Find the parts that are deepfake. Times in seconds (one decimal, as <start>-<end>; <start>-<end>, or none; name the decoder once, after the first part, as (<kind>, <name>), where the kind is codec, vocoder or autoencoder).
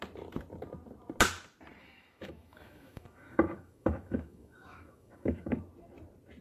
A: 1.8-5.6 (autoencoder, DAC-VAE)